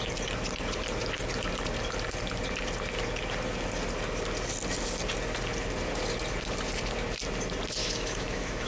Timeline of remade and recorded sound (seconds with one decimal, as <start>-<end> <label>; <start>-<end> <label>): 0.0-7.8 recorded; 7.8-8.7 remade